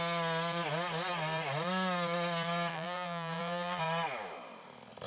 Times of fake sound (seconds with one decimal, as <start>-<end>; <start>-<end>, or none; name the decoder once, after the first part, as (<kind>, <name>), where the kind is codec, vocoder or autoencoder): 2.7-3.8 (vocoder, BigVGAN v2)

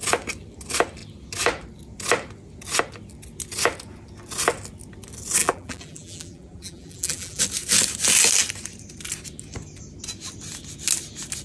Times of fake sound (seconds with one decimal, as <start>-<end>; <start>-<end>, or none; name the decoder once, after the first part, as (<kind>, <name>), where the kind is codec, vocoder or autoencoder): 5.4-7.4 (vocoder, BigVGAN v2)

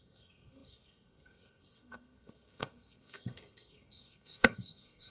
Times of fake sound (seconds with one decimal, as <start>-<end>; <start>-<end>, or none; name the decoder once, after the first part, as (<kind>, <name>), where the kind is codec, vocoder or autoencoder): 0.0-5.1 (codec, SNAC)

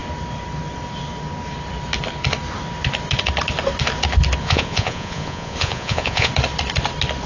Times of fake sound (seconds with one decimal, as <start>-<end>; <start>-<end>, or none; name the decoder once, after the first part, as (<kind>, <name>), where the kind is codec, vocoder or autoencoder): 4.4-6.3 (vocoder, Vocos)

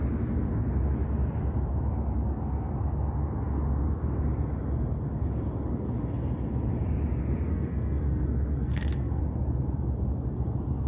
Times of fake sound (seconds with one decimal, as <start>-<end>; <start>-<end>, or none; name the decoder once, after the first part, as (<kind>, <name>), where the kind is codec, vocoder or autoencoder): 7.5-9.2 (codec, SNAC)